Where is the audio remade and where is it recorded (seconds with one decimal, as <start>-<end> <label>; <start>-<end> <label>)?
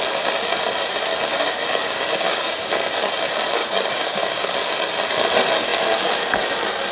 0.0-1.3 recorded; 1.3-2.7 remade; 2.7-3.6 recorded; 3.6-4.5 remade; 4.5-6.9 recorded